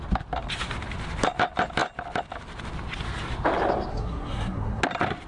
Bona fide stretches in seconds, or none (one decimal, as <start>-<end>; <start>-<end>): 0.0-3.9; 4.8-5.3